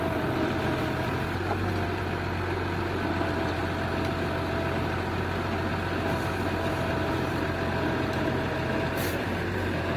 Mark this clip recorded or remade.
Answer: remade